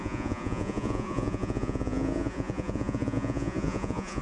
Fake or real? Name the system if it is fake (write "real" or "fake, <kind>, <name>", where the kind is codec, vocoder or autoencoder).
fake, vocoder, Vocos